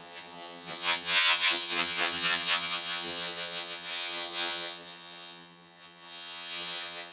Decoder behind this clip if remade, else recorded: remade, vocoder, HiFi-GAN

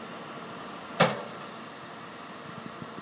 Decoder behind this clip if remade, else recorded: recorded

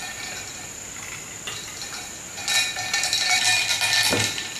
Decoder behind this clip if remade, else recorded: recorded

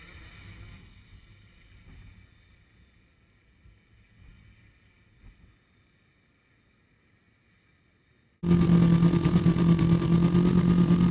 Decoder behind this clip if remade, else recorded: recorded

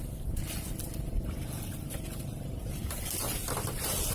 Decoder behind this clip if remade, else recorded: remade, vocoder, BigVGAN v2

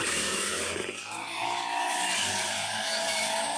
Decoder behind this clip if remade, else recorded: remade, codec, DAC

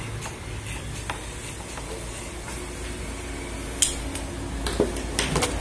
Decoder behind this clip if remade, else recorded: recorded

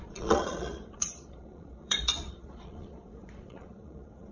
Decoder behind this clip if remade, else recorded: remade, vocoder, Vocos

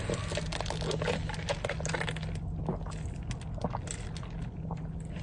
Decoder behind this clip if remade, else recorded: recorded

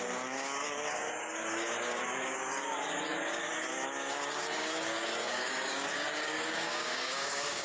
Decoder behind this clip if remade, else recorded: remade, codec, DAC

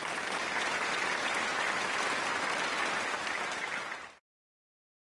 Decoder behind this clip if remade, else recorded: recorded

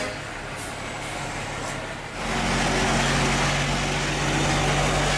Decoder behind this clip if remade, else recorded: recorded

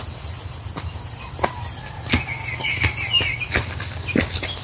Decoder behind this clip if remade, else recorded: recorded